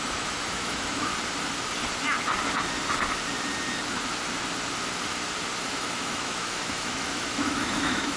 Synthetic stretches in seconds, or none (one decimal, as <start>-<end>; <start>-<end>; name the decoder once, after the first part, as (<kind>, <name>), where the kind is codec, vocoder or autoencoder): 0.0-1.1 (autoencoder, DAC-VAE); 5.6-8.2